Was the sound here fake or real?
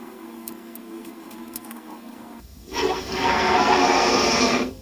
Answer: fake